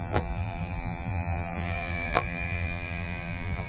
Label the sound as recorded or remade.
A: remade